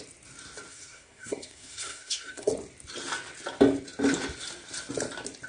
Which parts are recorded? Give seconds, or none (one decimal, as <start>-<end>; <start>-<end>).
0.0-0.7; 2.5-5.5